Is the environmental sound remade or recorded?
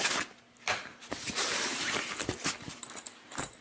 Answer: recorded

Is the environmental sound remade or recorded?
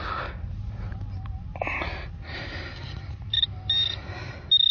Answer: recorded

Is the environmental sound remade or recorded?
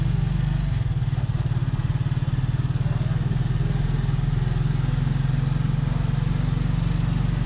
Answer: recorded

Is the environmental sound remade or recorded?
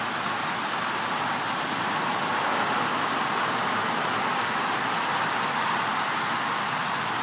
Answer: recorded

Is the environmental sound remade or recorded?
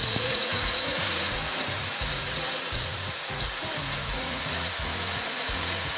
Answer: remade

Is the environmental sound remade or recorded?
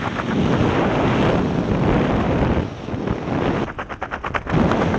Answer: recorded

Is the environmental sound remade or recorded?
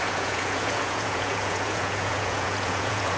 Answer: remade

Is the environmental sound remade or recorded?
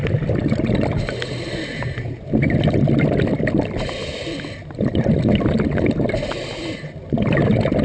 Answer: recorded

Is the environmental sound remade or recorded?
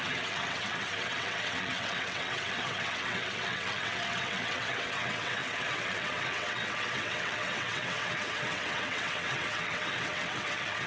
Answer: remade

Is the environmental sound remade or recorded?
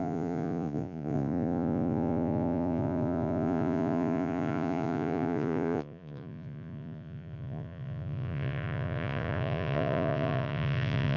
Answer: remade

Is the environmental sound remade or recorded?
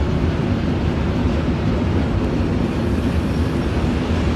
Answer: recorded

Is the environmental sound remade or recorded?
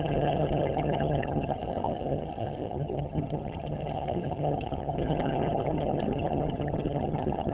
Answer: remade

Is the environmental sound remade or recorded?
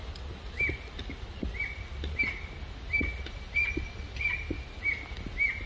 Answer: recorded